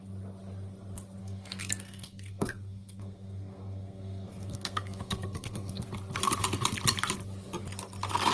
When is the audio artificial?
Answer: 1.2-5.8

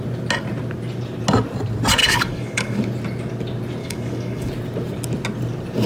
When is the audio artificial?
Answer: 2.0-2.8; 3.8-4.5

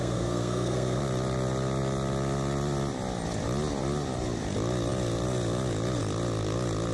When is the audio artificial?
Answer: 0.0-1.0

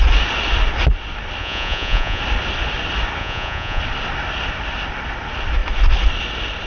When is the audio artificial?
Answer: 1.4-2.2; 3.2-3.8

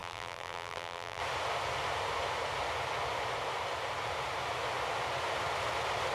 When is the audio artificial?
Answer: 0.0-1.2

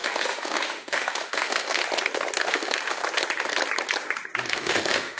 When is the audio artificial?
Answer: 0.0-1.8; 2.5-3.0; 4.5-5.2